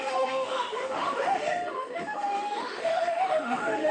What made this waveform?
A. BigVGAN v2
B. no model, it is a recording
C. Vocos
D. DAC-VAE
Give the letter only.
D